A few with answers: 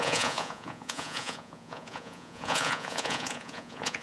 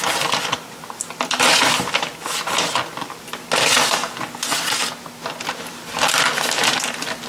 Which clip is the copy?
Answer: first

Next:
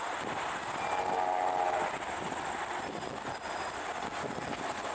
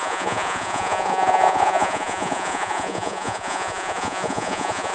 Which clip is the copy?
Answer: second